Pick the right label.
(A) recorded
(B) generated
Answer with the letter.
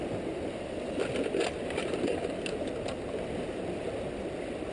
A